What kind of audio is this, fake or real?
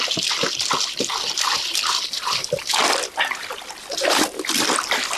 real